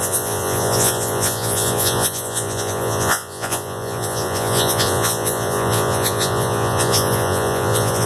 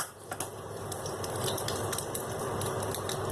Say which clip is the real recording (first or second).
second